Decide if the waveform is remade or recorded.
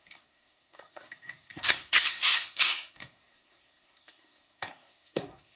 remade